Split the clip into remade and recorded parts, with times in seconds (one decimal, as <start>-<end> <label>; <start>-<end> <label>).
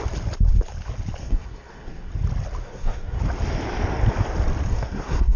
0.0-1.2 recorded; 1.2-2.1 remade; 2.1-2.6 recorded; 2.6-3.2 remade; 3.2-4.7 recorded; 4.7-5.4 remade